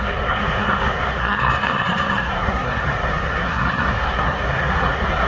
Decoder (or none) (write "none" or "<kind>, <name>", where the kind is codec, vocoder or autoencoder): codec, SNAC